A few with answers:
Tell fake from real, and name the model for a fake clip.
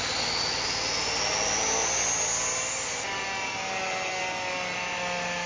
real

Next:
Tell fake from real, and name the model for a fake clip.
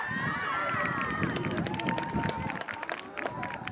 real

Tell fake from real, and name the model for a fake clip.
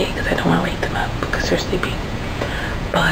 fake, vocoder, Vocos